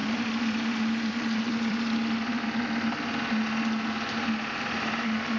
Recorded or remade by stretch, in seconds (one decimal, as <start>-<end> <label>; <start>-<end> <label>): 0.0-2.0 remade; 2.0-5.4 recorded